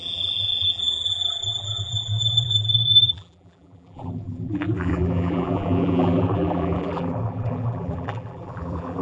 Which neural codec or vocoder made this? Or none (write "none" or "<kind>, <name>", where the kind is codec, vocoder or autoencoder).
vocoder, BigVGAN v2